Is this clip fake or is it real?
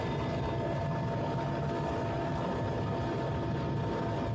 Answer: real